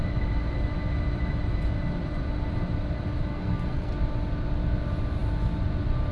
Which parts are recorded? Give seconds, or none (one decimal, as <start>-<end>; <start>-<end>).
0.0-3.3; 3.9-6.1